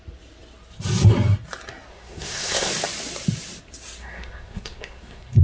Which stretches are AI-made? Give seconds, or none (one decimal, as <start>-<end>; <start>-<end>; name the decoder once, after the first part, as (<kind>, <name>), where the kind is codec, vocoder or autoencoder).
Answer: 1.9-2.7 (codec, SNAC); 4.0-5.4